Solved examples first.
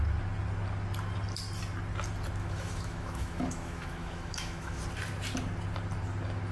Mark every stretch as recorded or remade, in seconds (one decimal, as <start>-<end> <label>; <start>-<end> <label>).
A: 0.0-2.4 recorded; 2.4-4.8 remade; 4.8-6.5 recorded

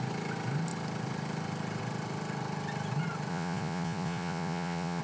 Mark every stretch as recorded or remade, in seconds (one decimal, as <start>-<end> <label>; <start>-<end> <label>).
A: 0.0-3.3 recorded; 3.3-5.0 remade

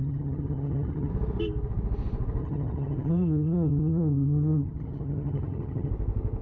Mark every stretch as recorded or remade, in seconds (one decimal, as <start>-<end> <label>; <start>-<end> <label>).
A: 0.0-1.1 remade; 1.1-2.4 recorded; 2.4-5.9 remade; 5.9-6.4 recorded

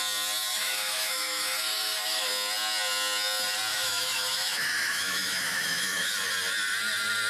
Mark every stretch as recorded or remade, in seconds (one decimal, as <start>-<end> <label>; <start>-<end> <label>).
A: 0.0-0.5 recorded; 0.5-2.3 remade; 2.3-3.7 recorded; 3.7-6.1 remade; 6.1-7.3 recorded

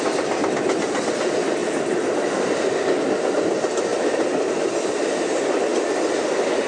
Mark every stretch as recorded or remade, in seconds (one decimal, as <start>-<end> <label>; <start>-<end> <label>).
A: 0.0-6.7 recorded

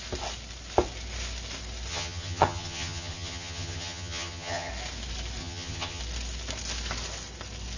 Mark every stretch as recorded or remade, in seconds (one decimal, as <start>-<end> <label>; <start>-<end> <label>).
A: 0.0-1.9 recorded; 1.9-4.7 remade; 4.7-5.4 recorded; 5.4-6.0 remade; 6.0-7.8 recorded

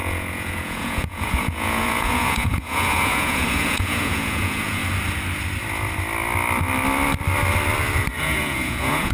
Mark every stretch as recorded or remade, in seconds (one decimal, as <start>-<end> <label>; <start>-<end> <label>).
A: 0.0-4.8 remade; 4.8-8.2 recorded; 8.2-9.1 remade